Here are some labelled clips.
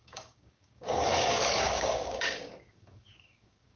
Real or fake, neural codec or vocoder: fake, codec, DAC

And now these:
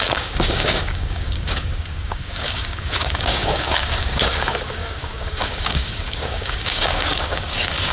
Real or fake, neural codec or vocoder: fake, codec, DAC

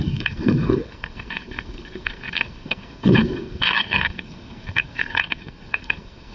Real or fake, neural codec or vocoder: fake, codec, SNAC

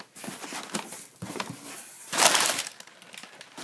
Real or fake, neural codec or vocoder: real